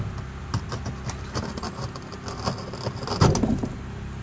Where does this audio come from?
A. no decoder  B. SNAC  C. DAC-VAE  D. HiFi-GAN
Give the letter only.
A